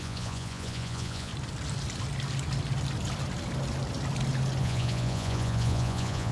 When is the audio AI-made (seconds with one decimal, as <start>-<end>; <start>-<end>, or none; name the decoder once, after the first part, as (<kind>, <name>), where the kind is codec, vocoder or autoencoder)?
0.0-1.3 (vocoder, Vocos); 4.6-6.3